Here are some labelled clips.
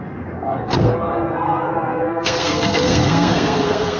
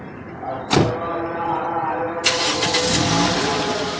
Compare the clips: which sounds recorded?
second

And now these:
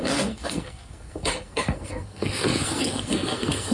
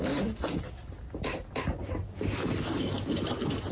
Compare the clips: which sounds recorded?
second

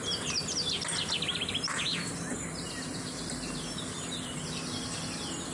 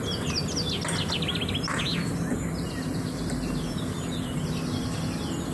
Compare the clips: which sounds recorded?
second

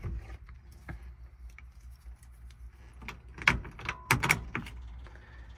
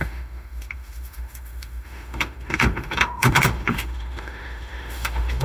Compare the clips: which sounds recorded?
first